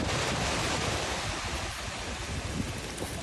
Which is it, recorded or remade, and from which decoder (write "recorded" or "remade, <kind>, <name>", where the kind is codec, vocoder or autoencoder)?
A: remade, vocoder, BigVGAN v2